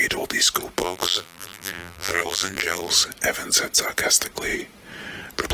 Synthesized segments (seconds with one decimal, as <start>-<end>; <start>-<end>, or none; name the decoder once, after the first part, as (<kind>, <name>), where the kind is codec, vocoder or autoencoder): 0.8-2.9 (vocoder, BigVGAN v2)